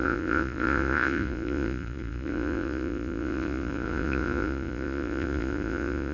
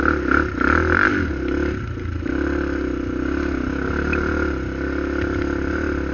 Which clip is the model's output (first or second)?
first